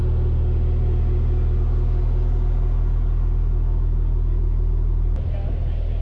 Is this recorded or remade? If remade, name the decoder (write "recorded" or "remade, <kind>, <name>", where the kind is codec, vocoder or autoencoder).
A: recorded